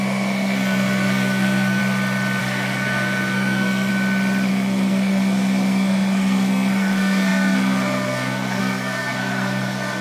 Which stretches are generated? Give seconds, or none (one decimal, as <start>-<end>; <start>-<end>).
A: 0.0-1.8; 2.4-3.9; 4.5-10.0